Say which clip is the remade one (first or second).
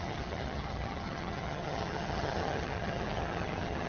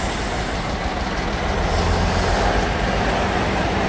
first